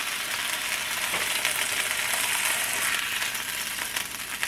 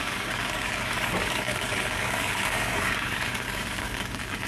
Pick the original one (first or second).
first